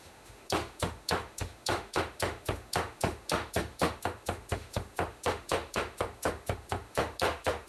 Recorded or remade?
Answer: remade